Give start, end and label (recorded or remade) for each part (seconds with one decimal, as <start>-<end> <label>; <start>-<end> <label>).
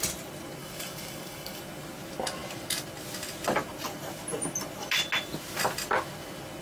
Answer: 0.0-0.6 recorded; 0.6-1.6 remade; 1.6-6.6 recorded